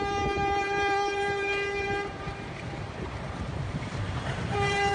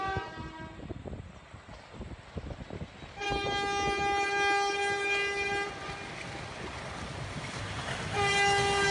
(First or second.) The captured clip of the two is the second